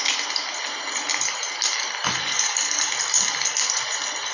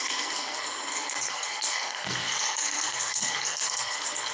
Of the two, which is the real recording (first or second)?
first